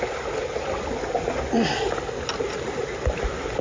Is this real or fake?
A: real